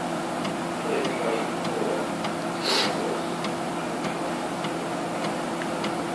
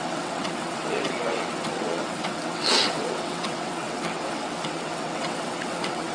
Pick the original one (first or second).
first